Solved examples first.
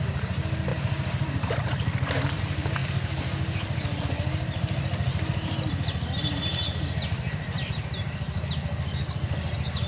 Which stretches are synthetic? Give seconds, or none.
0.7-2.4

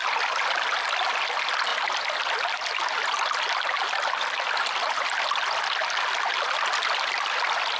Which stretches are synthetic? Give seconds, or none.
none

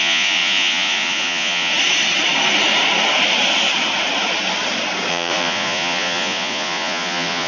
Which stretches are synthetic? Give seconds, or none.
0.0-1.7; 5.1-7.5

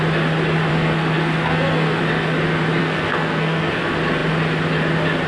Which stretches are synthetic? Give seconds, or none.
0.7-2.0; 2.8-3.7

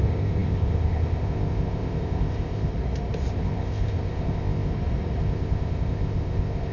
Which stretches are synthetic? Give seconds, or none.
0.0-2.7; 3.3-4.7; 5.2-6.7

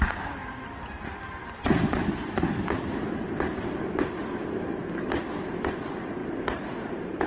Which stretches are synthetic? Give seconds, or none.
6.2-7.3

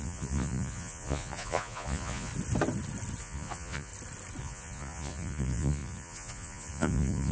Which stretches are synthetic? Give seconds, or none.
0.0-2.3; 3.2-3.9; 4.4-7.3